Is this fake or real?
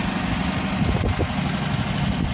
real